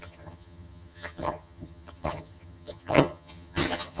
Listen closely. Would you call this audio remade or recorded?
remade